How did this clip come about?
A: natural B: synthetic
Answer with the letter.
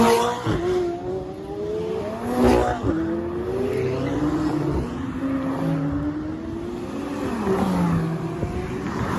A